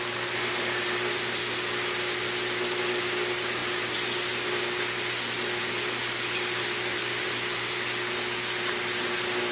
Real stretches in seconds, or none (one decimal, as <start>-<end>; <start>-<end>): 0.0-9.5